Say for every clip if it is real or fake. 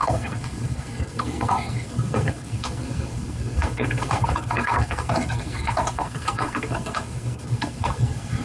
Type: fake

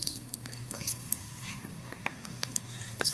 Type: fake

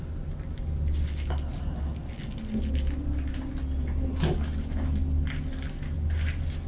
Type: real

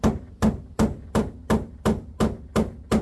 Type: real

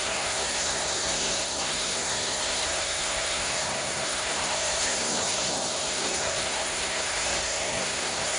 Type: fake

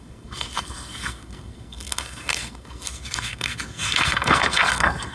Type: fake